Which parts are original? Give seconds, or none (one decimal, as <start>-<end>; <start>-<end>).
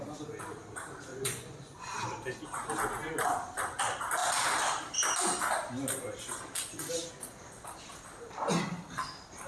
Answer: 0.0-1.1; 2.1-9.5